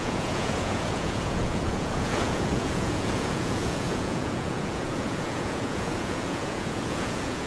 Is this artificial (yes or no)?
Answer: yes